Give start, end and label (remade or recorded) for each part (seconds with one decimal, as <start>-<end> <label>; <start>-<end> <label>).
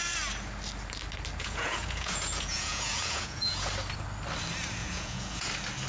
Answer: 0.0-1.4 recorded; 1.4-3.7 remade; 3.7-4.8 recorded; 4.8-5.5 remade; 5.5-5.9 recorded